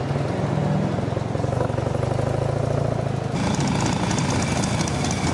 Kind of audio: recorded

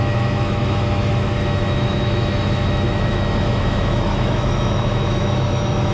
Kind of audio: remade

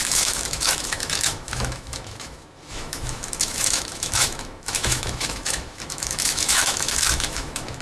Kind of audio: remade